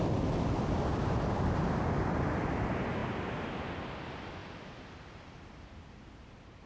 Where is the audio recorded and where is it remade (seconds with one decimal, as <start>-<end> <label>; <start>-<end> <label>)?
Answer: 0.0-6.7 recorded